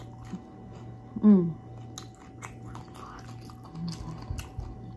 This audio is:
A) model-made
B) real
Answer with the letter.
B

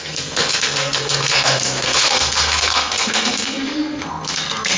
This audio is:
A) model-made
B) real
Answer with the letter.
A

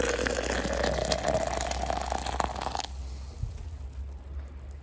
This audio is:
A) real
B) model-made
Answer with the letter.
A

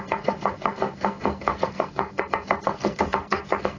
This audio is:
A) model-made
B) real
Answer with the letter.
A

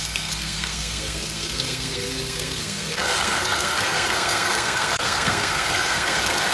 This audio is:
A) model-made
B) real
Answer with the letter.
A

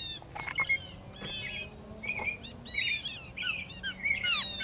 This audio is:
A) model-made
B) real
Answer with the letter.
B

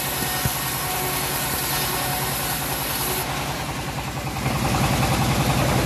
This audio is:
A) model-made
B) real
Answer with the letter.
B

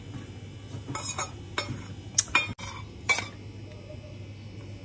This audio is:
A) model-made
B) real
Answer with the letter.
B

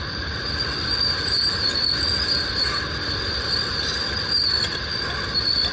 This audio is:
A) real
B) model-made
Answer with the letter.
A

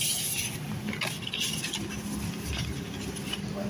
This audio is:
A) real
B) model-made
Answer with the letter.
A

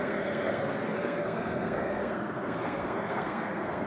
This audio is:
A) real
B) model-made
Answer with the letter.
B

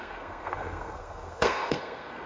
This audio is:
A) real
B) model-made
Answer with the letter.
B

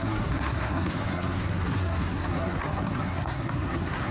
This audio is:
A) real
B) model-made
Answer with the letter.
B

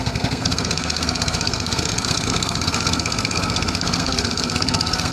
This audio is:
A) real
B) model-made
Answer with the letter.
B